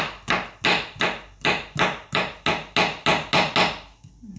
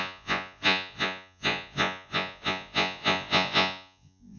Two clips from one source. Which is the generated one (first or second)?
second